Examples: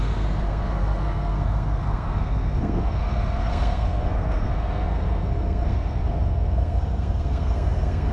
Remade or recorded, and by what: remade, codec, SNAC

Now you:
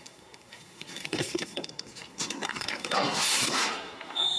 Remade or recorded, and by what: remade, codec, SNAC